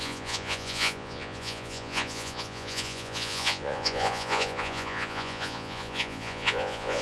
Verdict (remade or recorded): remade